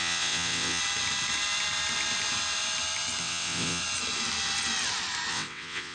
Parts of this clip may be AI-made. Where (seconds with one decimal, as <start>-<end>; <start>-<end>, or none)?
0.0-0.8; 3.2-3.8; 5.3-5.9